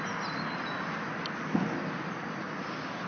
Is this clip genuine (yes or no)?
yes